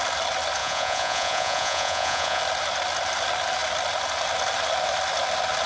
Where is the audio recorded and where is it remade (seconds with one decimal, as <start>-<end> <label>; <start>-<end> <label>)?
0.0-0.6 recorded; 0.6-2.4 remade; 2.4-5.7 recorded